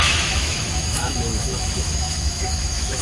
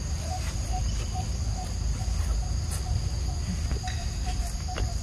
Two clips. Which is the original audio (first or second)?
second